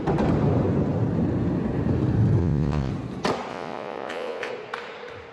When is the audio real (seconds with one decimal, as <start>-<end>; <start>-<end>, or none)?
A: 0.0-2.4; 2.9-3.5; 4.5-5.3